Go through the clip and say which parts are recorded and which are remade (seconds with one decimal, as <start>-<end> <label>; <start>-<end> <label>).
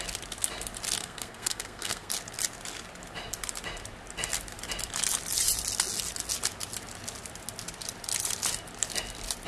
0.0-1.0 recorded; 1.0-2.1 remade; 2.1-9.5 recorded